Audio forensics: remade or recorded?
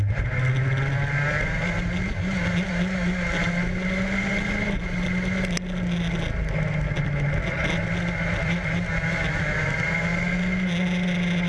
recorded